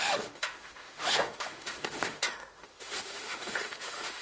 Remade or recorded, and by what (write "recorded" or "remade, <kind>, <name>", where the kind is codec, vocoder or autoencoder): remade, autoencoder, DAC-VAE